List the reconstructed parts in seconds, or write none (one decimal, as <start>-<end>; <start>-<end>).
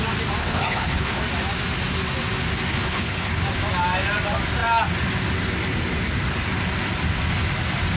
0.4-1.2; 2.7-3.3